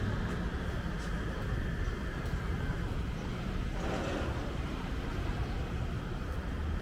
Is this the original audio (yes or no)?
yes